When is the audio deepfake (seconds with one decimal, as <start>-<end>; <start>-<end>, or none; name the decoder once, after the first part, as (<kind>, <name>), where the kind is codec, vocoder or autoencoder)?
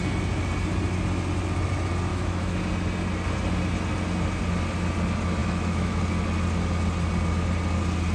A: 2.1-2.6 (autoencoder, DAC-VAE); 5.4-6.0